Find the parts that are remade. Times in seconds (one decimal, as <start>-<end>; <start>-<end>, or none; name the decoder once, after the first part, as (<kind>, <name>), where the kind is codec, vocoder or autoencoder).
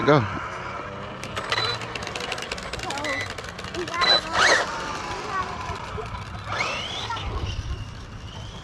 5.2-6.0 (vocoder, BigVGAN v2)